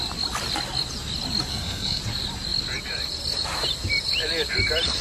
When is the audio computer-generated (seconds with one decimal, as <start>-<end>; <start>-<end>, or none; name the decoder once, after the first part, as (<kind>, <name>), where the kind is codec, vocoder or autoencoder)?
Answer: 1.5-2.0 (codec, SNAC)